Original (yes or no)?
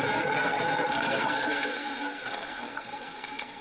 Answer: no